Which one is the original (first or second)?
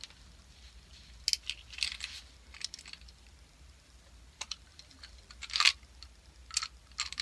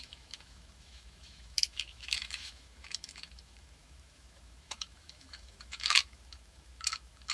first